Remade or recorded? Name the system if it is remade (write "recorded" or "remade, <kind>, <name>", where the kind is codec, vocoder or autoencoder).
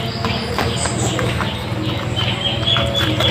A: recorded